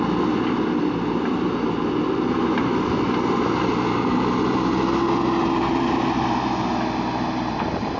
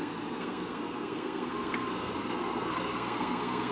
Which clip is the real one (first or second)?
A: first